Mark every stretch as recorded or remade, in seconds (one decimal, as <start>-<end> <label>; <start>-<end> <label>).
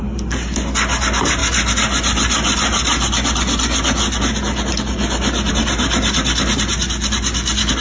0.0-7.8 recorded